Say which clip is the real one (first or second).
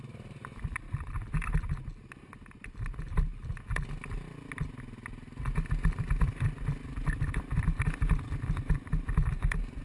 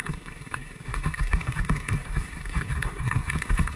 first